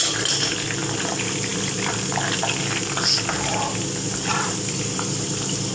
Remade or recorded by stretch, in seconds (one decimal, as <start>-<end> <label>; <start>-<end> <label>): 0.0-4.3 recorded; 4.3-5.7 remade

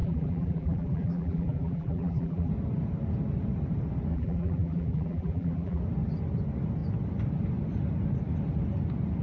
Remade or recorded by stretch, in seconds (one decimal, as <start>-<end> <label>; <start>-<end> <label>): 0.0-2.5 remade; 2.5-4.1 recorded; 4.1-5.8 remade; 5.8-9.2 recorded

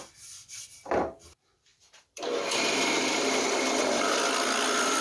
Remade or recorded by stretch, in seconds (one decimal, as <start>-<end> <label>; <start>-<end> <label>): 0.0-1.7 recorded; 1.7-3.4 remade; 3.4-5.0 recorded

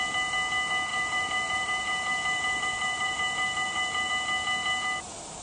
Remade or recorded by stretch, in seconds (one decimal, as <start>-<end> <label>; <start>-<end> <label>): 0.0-0.9 recorded; 0.9-4.1 remade; 4.1-5.4 recorded

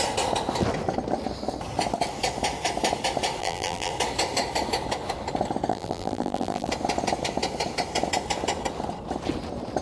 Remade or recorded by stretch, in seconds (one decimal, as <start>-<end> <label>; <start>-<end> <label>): 0.0-3.4 recorded; 3.4-3.9 remade; 3.9-5.7 recorded; 5.7-6.7 remade; 6.7-9.8 recorded